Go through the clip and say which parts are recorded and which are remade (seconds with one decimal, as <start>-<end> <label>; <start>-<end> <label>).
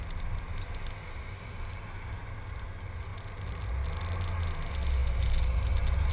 0.0-6.1 recorded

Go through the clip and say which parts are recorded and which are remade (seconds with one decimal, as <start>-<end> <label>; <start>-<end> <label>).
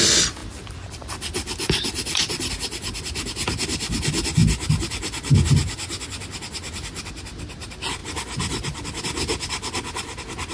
0.0-0.4 recorded; 0.4-2.5 remade; 2.5-8.0 recorded; 8.0-9.0 remade; 9.0-10.5 recorded